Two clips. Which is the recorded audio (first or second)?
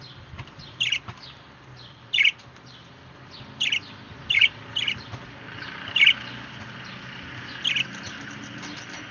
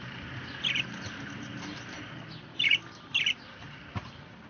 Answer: first